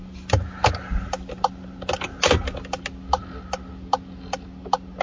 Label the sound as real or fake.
real